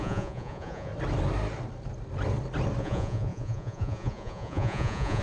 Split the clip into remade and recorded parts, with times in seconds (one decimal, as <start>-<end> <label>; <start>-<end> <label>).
0.0-0.9 remade; 0.9-2.8 recorded; 2.8-5.2 remade

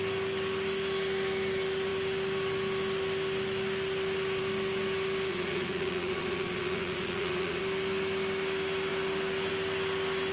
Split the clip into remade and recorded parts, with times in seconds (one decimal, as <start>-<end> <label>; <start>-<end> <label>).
0.0-5.3 recorded; 5.3-7.6 remade; 7.6-10.3 recorded

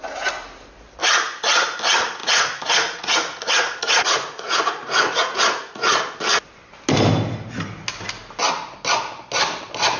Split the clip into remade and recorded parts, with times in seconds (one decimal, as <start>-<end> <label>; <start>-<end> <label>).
0.0-1.0 recorded; 1.0-1.8 remade; 1.8-2.2 recorded; 2.2-6.0 remade; 6.0-10.0 recorded

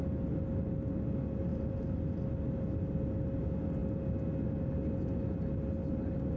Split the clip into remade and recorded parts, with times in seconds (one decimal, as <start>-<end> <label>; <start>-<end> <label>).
0.0-6.4 recorded

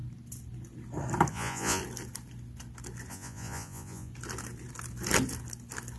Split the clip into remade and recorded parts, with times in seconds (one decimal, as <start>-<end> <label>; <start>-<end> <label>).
0.0-1.3 recorded; 1.3-1.8 remade; 1.8-3.1 recorded; 3.1-4.1 remade; 4.1-6.0 recorded